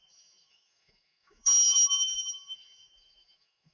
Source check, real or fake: fake